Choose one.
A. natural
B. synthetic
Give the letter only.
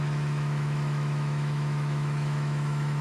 B